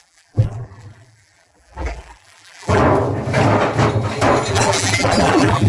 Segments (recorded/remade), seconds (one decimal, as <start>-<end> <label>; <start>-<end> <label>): 0.0-2.8 remade; 2.8-4.5 recorded; 4.5-5.7 remade